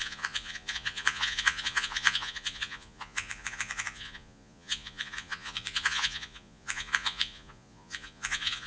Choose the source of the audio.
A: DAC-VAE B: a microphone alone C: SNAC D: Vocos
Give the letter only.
D